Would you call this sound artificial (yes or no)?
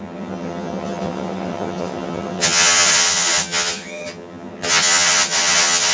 yes